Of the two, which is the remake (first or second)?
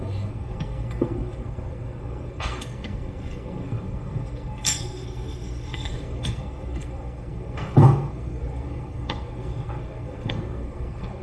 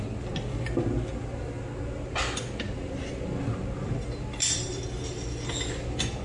first